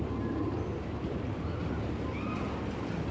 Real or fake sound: real